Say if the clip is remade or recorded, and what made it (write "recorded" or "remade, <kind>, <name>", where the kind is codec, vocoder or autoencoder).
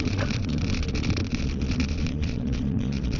remade, vocoder, Vocos